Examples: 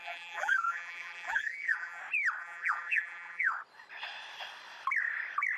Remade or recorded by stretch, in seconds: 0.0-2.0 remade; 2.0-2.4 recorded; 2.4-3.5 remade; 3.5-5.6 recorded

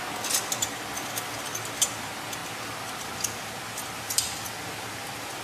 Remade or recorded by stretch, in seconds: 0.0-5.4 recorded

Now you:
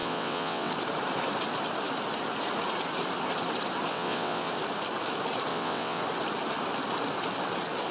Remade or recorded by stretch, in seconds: 0.0-0.7 remade; 0.7-3.9 recorded; 3.9-4.5 remade; 4.5-5.5 recorded; 5.5-6.0 remade; 6.0-7.9 recorded

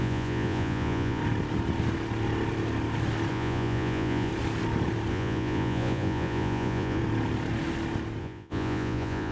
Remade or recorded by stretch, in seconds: 0.0-1.2 remade; 1.2-3.3 recorded; 3.3-4.3 remade; 4.3-5.1 recorded; 5.1-7.0 remade; 7.0-8.2 recorded; 8.2-9.3 remade